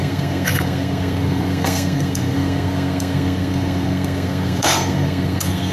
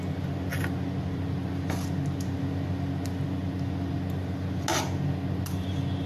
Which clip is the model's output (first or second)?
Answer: first